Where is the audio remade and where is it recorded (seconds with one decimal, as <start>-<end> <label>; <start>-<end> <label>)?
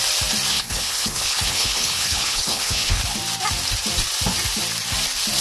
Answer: 0.0-0.5 recorded; 0.5-3.0 remade; 3.0-5.4 recorded